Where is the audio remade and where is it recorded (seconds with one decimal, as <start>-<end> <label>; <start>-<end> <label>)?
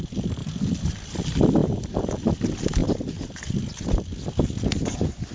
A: 0.0-1.6 recorded; 1.6-2.3 remade; 2.3-2.8 recorded; 2.8-3.4 remade; 3.4-5.3 recorded